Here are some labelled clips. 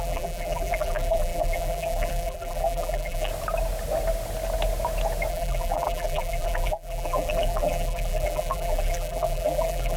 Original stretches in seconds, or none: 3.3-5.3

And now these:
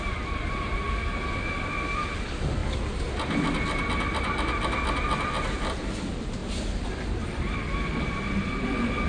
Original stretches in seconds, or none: 0.0-9.1

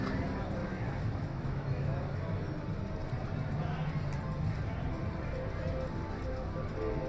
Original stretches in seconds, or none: 0.0-0.6; 2.5-7.1

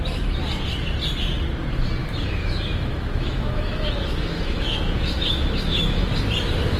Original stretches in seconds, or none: 0.0-2.0; 6.1-6.8

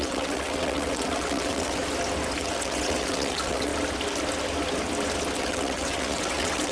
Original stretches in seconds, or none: 1.8-2.4; 3.7-5.4

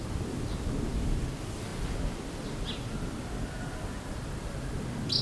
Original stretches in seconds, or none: 0.0-5.2

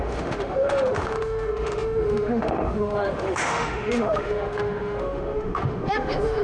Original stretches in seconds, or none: none

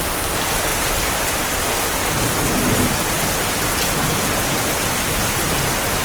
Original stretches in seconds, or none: 0.0-0.7; 4.0-6.0